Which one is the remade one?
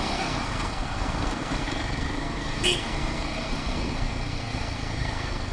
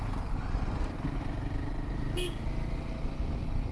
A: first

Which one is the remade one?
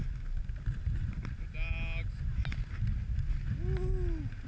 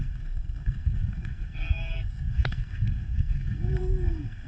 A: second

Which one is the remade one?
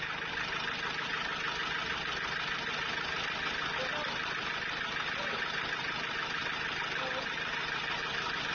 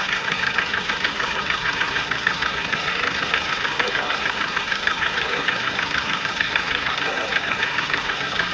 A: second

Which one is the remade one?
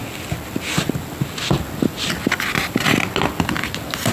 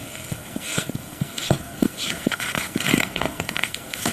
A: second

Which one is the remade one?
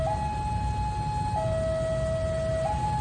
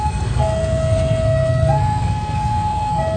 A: second